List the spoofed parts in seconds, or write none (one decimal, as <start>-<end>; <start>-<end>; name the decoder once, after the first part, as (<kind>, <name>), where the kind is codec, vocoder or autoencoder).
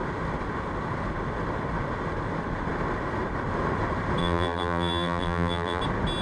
4.2-5.8 (vocoder, BigVGAN v2)